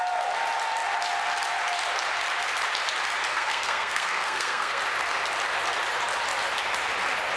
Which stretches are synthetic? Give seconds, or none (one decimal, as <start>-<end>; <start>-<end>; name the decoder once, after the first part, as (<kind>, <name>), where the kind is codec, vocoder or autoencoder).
3.3-4.8 (codec, SNAC)